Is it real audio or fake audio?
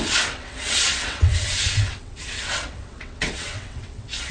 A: fake